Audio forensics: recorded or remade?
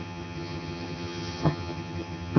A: remade